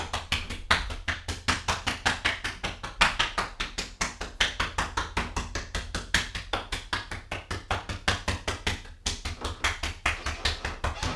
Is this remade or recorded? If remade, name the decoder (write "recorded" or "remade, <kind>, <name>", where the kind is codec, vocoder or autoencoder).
recorded